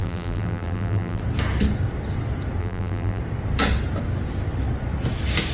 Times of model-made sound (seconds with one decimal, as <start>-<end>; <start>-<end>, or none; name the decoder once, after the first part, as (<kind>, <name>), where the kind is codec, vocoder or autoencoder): 0.0-1.2 (vocoder, BigVGAN v2); 2.6-3.2